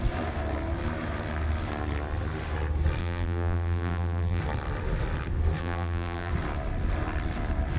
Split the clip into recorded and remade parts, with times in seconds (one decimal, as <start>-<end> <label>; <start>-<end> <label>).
0.0-3.0 recorded; 3.0-4.4 remade; 4.4-5.6 recorded; 5.6-6.3 remade; 6.3-7.8 recorded